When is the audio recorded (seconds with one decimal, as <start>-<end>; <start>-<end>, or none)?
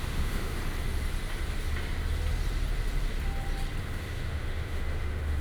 0.6-3.8